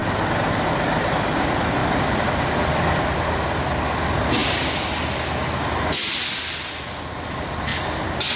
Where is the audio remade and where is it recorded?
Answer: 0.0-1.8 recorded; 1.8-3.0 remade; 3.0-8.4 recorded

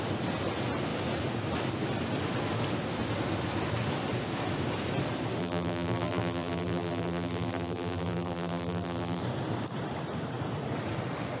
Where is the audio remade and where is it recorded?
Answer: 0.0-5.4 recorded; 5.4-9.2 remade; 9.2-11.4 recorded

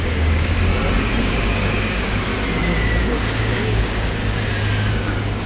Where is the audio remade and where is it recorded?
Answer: 0.0-0.7 remade; 0.7-1.2 recorded; 1.2-2.3 remade; 2.3-3.0 recorded; 3.0-4.2 remade; 4.2-4.9 recorded; 4.9-5.5 remade

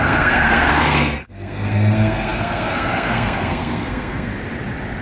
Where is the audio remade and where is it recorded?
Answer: 0.0-4.3 remade; 4.3-5.0 recorded

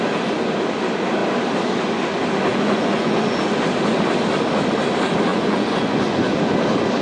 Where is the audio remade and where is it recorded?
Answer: 0.0-2.5 recorded; 2.5-3.4 remade; 3.4-5.3 recorded; 5.3-6.5 remade; 6.5-7.0 recorded

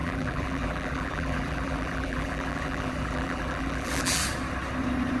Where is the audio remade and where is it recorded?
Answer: 0.0-4.2 remade; 4.2-5.2 recorded